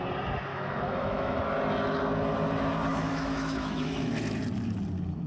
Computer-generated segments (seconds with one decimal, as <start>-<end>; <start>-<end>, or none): 0.5-1.4; 2.9-4.1